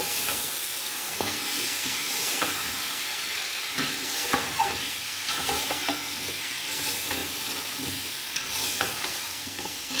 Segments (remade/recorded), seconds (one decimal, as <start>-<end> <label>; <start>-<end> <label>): 0.0-10.0 remade